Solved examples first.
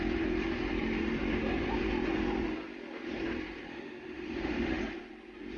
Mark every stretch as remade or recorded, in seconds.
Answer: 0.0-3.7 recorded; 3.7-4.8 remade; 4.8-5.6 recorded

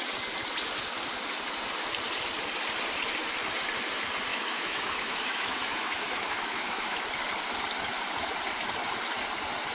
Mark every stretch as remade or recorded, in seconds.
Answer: 0.0-4.3 recorded; 4.3-7.0 remade; 7.0-9.7 recorded